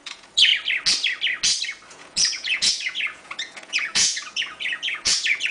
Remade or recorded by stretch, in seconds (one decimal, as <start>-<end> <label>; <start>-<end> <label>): 0.0-0.5 remade; 0.5-1.9 recorded; 1.9-5.5 remade